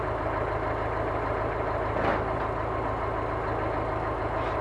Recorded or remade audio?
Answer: recorded